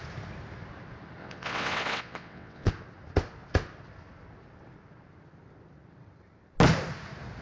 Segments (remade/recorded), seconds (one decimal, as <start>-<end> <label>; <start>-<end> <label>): 0.0-1.2 recorded; 1.2-2.7 remade; 2.7-7.4 recorded